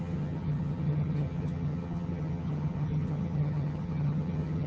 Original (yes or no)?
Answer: no